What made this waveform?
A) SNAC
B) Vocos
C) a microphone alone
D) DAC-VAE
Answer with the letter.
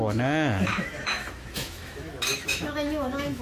D